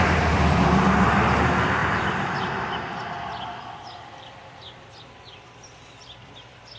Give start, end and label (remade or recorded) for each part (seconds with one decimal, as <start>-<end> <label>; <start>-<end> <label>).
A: 0.0-6.8 remade